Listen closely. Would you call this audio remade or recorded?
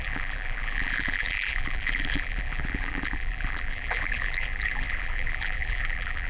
remade